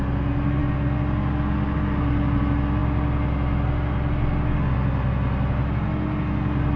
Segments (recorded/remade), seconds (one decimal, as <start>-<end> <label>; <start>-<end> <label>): 0.0-6.8 recorded